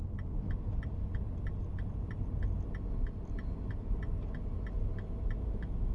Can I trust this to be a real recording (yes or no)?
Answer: yes